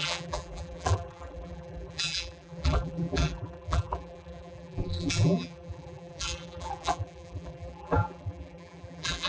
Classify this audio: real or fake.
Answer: fake